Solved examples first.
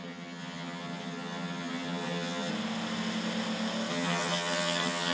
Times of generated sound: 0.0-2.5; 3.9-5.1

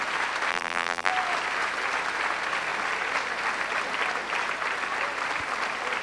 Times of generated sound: 0.5-1.1

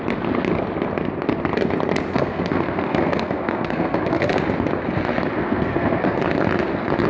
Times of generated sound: 2.1-4.3; 5.4-6.2